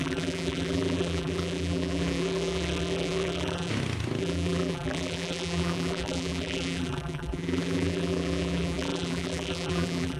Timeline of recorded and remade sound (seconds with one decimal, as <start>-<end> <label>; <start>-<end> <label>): 0.0-3.7 remade; 3.7-4.2 recorded; 4.2-10.2 remade